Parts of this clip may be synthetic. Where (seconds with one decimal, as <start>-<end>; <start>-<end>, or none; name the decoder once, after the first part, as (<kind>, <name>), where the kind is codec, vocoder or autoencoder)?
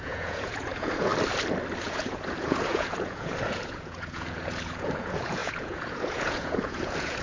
0.0-1.1 (vocoder, Vocos); 1.8-7.2